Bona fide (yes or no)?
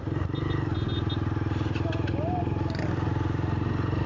yes